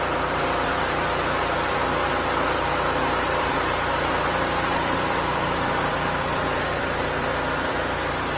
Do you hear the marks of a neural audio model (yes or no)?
yes